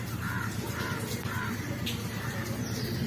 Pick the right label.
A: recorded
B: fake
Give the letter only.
B